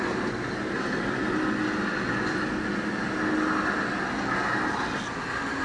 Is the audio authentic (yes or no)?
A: yes